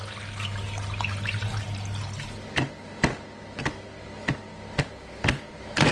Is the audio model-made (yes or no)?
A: no